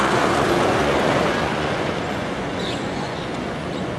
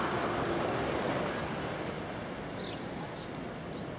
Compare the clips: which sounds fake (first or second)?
first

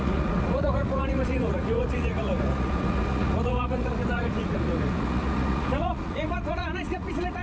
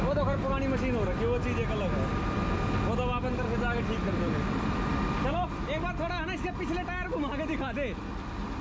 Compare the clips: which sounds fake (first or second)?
first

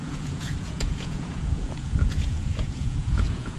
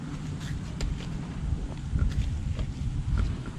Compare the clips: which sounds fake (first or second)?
first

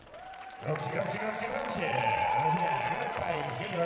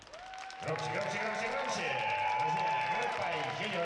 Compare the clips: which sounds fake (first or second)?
first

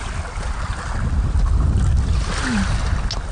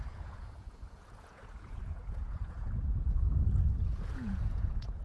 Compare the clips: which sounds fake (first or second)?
second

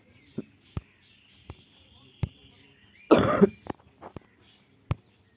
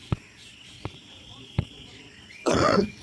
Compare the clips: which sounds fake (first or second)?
second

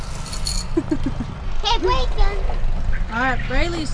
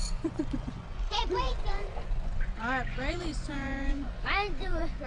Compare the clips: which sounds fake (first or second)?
second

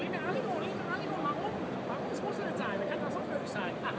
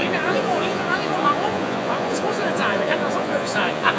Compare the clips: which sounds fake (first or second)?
second